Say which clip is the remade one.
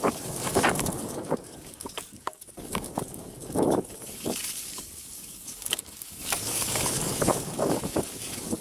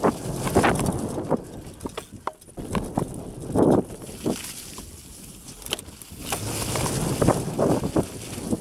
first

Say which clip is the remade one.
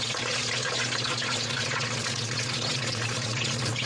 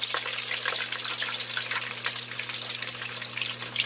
first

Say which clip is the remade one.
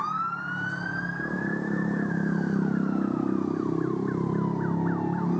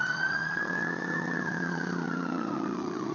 second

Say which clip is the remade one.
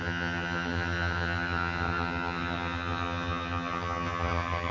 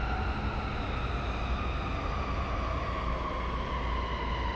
first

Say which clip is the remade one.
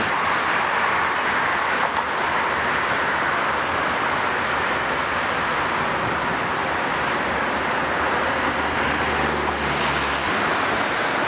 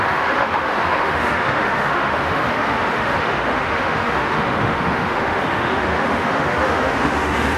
second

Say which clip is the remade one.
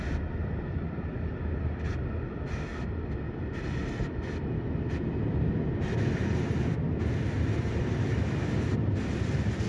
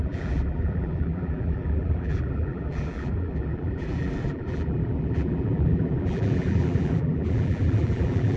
second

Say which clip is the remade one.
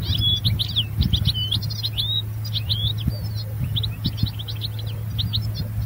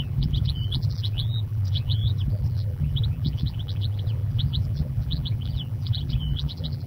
second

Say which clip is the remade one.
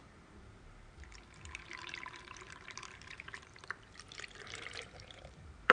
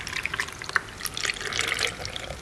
first